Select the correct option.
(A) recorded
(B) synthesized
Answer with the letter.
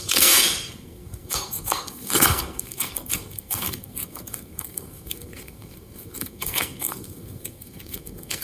B